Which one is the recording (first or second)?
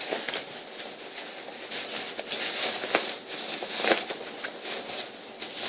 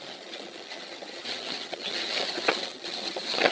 first